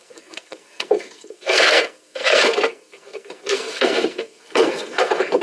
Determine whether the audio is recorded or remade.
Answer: remade